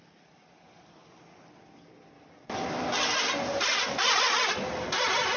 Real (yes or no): yes